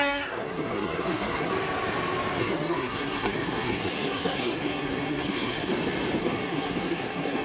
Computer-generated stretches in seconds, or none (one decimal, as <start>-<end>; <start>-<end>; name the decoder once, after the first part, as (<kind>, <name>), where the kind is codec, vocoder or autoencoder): 0.0-1.5 (codec, SNAC); 2.4-5.7; 6.2-7.4